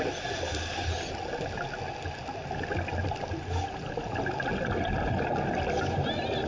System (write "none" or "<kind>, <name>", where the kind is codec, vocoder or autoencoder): none